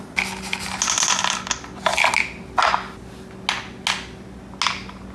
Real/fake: real